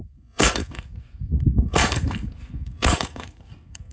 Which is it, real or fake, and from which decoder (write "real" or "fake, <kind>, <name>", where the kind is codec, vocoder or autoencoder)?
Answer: fake, codec, SNAC